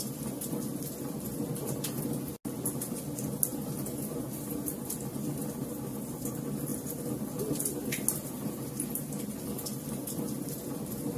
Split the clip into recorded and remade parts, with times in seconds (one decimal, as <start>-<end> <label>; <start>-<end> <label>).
0.0-11.2 recorded